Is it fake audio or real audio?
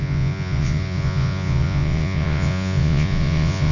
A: fake